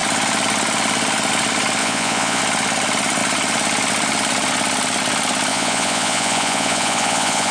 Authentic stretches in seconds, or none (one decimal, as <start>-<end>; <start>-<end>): 0.0-1.8; 2.4-5.5